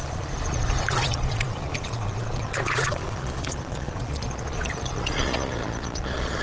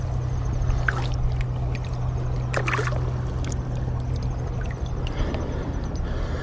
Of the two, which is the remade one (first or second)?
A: first